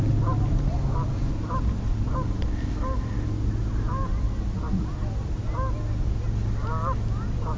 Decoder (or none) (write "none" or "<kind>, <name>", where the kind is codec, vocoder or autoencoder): none